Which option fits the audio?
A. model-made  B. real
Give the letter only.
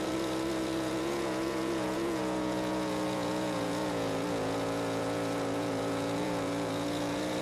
A